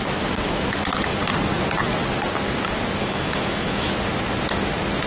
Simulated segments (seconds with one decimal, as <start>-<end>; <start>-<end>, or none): 3.0-3.9